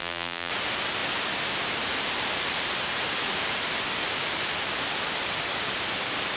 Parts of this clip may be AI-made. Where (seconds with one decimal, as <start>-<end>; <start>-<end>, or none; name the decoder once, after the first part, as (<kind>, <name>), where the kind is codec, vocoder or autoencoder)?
0.0-0.5 (vocoder, BigVGAN v2)